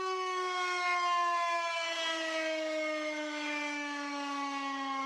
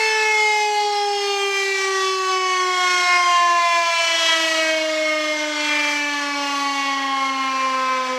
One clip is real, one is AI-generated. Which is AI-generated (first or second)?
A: first